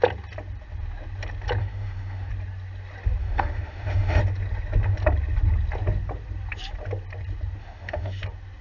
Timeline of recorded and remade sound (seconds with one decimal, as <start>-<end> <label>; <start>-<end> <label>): 0.0-1.6 recorded; 1.6-2.3 remade; 2.3-3.2 recorded; 3.2-4.2 remade; 4.2-7.6 recorded; 7.6-8.2 remade; 8.2-8.6 recorded